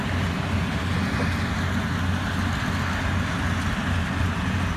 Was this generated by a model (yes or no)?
no